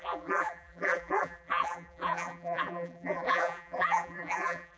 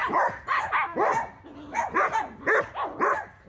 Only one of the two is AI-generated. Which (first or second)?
first